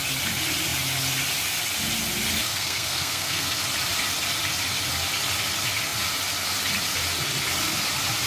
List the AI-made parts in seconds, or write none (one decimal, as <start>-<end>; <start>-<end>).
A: 2.4-3.6